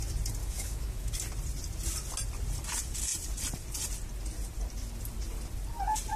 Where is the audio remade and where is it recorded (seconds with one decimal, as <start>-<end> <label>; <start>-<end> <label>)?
0.0-0.4 recorded; 0.4-1.1 remade; 1.1-6.2 recorded